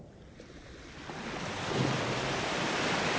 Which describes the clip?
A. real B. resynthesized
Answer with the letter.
A